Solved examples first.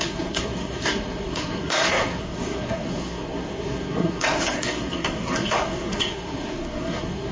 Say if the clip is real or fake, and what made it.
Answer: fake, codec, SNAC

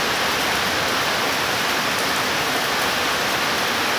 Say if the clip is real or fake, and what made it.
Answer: real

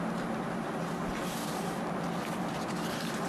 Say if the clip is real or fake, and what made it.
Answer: real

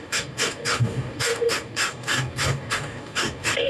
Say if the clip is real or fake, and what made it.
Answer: fake, codec, DAC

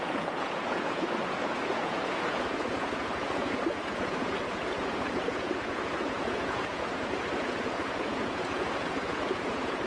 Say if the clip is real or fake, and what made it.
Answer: fake, vocoder, Vocos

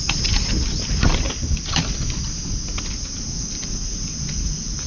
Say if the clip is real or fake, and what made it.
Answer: real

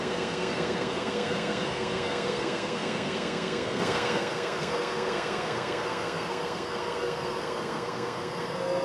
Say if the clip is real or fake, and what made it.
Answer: fake, codec, SNAC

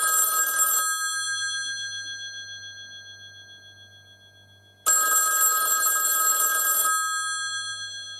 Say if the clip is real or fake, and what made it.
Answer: real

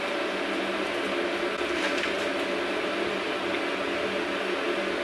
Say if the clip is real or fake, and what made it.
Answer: real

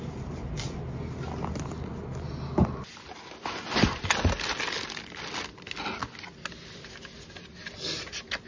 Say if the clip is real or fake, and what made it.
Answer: real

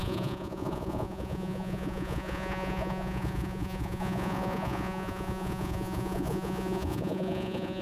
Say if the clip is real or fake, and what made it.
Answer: fake, vocoder, Vocos